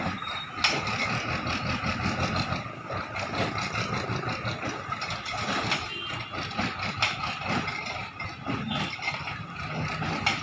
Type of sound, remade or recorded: recorded